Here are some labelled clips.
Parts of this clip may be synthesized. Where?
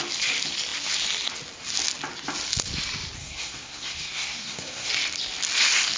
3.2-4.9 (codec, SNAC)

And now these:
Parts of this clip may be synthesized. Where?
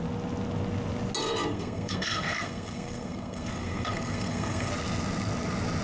1.2-4.7 (codec, SNAC)